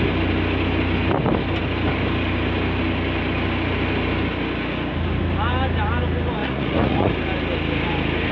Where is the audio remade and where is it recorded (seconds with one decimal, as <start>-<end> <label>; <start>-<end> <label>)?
0.0-6.4 recorded; 6.4-7.1 remade; 7.1-8.3 recorded